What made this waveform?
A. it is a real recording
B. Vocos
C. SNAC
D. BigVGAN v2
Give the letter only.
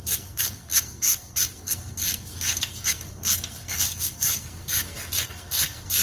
C